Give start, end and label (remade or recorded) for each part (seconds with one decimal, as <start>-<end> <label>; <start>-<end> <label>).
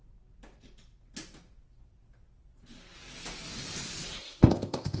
0.0-4.2 recorded; 4.2-5.0 remade